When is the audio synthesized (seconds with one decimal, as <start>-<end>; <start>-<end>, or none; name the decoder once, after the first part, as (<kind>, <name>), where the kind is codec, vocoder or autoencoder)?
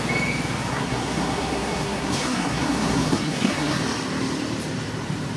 0.7-3.8 (codec, SNAC)